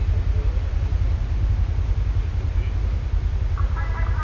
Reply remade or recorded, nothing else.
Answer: recorded